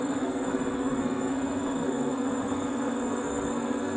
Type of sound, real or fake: fake